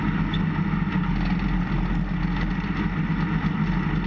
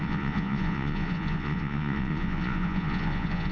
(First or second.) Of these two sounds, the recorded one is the first